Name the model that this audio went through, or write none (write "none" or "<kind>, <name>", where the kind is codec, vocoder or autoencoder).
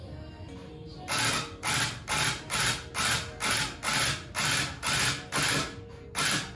none